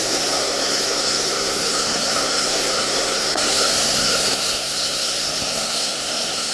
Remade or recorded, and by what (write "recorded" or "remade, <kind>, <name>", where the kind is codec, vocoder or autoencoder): remade, codec, SNAC